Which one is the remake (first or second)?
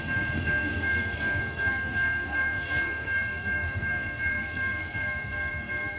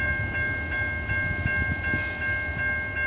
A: first